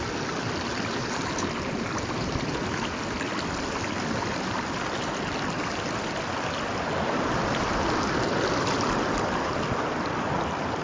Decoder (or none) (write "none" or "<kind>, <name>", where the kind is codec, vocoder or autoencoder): none